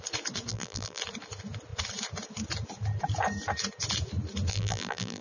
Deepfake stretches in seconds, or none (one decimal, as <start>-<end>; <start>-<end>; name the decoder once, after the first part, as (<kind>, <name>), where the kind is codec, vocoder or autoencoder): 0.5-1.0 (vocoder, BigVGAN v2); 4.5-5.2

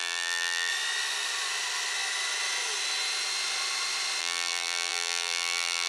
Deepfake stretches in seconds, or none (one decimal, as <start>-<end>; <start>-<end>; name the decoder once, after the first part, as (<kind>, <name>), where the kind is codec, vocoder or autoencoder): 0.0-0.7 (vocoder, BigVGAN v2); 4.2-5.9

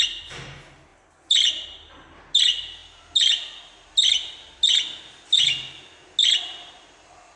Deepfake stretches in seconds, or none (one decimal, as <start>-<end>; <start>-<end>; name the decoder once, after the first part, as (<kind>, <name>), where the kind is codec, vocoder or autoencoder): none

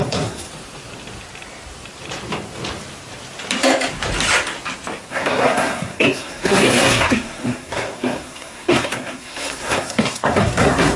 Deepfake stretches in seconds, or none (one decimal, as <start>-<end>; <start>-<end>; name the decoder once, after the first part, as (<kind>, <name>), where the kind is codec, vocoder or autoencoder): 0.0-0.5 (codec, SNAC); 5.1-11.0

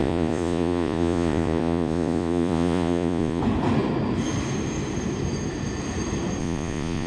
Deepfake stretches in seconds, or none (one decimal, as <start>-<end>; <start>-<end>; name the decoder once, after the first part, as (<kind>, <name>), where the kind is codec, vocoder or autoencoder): 0.0-3.4 (vocoder, Vocos); 6.4-7.1